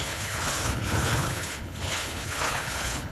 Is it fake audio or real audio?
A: fake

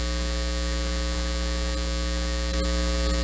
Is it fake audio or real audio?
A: real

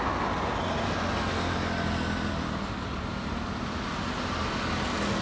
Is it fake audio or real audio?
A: real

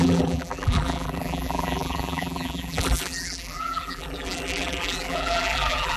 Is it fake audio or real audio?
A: fake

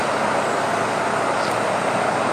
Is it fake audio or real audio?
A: real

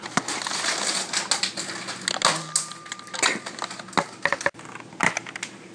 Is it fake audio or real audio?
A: real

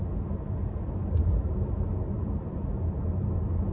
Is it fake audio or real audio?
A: real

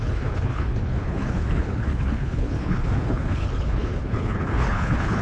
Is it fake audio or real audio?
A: fake